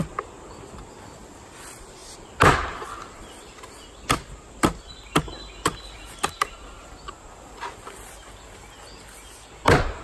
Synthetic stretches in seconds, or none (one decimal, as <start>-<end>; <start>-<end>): none